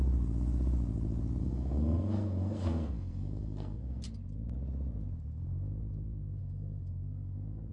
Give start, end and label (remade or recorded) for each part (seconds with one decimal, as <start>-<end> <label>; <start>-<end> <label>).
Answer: 0.0-1.4 recorded; 1.4-4.0 remade; 4.0-6.4 recorded; 6.4-7.7 remade